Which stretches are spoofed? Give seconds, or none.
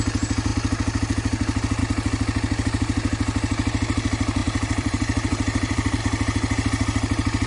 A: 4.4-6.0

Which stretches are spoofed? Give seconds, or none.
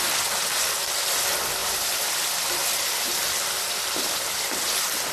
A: 1.6-5.1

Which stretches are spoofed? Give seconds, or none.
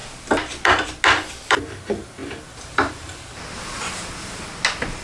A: 2.2-3.8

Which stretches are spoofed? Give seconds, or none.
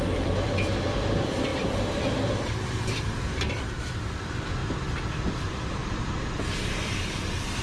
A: 0.0-4.6; 5.2-5.8; 6.5-7.6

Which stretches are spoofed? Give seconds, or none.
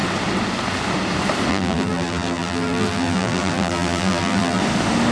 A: 1.5-4.6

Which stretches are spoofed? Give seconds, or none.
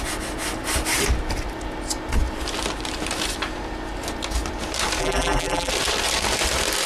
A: 5.0-5.7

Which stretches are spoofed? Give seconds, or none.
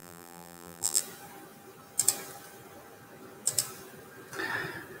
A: 0.0-1.0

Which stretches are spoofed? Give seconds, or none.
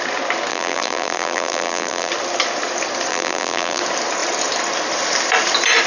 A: 0.5-2.1; 3.1-3.8